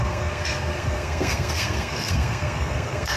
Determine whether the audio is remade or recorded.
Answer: remade